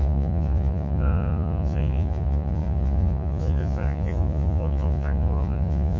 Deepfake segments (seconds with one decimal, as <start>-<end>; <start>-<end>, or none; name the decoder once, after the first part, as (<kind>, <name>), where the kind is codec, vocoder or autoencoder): 0.0-6.0 (vocoder, Vocos)